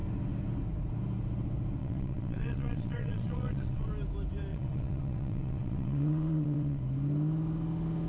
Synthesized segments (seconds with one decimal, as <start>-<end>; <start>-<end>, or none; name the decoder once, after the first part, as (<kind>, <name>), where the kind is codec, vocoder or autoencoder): 1.8-3.9 (vocoder, WaveNeXt); 4.5-6.8